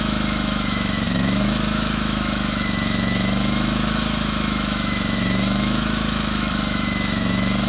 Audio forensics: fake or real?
fake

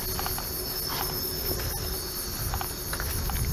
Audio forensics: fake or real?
real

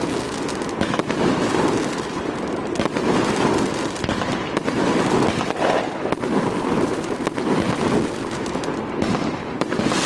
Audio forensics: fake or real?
real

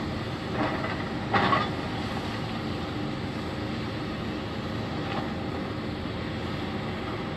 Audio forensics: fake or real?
real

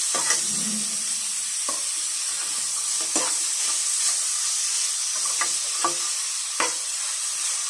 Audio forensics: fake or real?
real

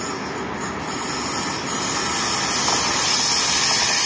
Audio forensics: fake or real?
real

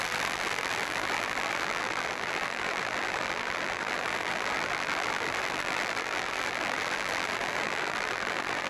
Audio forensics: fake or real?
fake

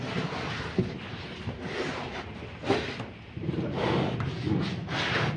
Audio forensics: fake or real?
real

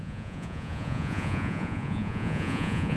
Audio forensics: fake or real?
fake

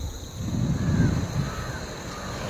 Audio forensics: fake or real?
real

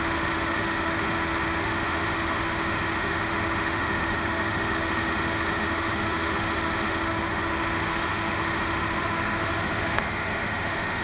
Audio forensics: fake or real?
fake